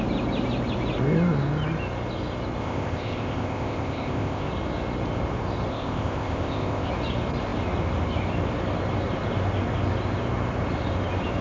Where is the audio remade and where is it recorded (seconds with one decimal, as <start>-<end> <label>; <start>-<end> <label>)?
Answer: 0.0-2.6 recorded; 2.6-4.5 remade; 4.5-5.7 recorded; 5.7-6.9 remade; 6.9-11.4 recorded